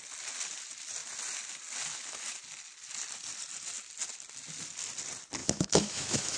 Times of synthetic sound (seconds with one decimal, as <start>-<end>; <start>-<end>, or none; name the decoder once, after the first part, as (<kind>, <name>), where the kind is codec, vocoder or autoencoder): 5.4-6.4 (autoencoder, DAC-VAE)